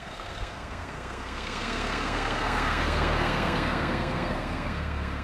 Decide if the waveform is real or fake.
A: fake